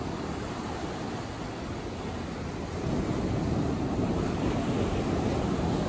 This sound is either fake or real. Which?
real